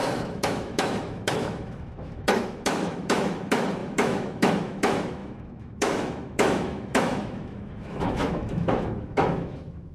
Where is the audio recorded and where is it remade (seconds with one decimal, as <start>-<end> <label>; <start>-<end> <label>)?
0.0-9.9 remade